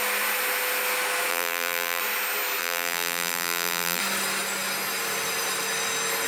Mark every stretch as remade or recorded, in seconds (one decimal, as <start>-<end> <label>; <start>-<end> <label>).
0.0-1.3 recorded; 1.3-2.0 remade; 2.0-2.6 recorded; 2.6-4.0 remade; 4.0-6.3 recorded